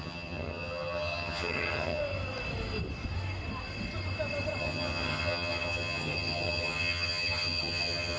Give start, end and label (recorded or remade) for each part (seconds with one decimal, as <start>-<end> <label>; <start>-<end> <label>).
0.0-2.0 remade; 2.0-4.6 recorded; 4.6-8.2 remade

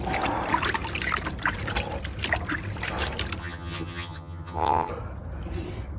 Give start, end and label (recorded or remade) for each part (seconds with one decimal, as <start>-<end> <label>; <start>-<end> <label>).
0.0-3.4 recorded; 3.4-4.9 remade; 4.9-6.0 recorded

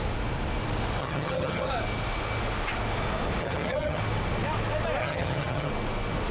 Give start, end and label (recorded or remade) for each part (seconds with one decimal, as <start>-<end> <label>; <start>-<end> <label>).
0.0-1.0 recorded; 1.0-1.7 remade; 1.7-3.4 recorded; 3.4-4.0 remade; 4.0-5.0 recorded; 5.0-5.7 remade; 5.7-6.3 recorded

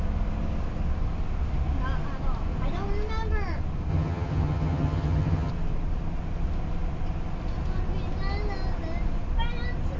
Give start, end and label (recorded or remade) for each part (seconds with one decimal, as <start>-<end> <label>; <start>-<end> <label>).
0.0-3.9 recorded; 3.9-5.5 remade; 5.5-10.0 recorded

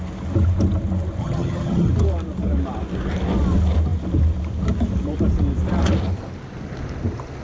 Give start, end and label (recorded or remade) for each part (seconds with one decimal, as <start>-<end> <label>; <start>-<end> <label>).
0.0-1.2 recorded; 1.2-1.9 remade; 1.9-7.4 recorded

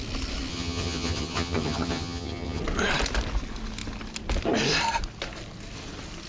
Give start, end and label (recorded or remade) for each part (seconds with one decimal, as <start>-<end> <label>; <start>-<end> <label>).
0.0-0.5 recorded; 0.5-2.6 remade; 2.6-6.3 recorded

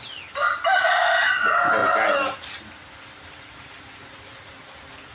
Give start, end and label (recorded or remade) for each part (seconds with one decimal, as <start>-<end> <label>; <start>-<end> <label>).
0.0-5.1 recorded